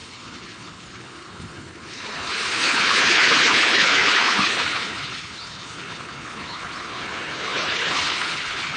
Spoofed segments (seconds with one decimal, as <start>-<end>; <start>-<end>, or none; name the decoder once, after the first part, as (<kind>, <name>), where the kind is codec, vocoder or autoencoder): 0.0-8.8 (codec, HILCodec)